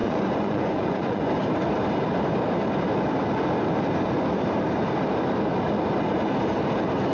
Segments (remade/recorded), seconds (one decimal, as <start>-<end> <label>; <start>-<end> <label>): 0.0-1.3 remade; 1.3-7.1 recorded